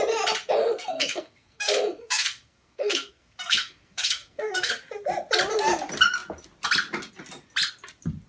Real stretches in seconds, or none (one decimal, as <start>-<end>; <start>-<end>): 0.0-0.6; 4.7-8.3